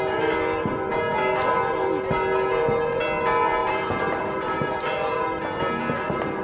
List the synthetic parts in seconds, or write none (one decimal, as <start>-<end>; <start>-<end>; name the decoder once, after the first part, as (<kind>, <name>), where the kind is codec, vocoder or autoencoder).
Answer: 3.6-5.4 (vocoder, BigVGAN v2)